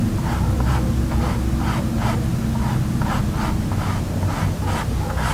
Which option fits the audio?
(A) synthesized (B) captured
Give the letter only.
B